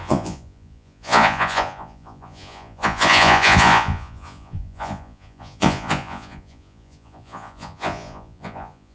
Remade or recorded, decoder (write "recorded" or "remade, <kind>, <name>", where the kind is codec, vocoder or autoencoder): remade, vocoder, Vocos